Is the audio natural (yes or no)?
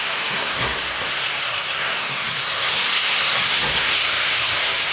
no